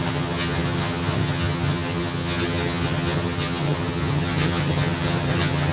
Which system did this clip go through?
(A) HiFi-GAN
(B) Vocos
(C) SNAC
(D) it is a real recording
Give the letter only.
A